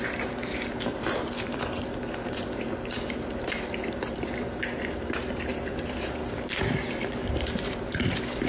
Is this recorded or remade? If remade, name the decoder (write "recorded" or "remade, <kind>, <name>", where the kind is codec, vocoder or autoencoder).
remade, vocoder, BigVGAN v2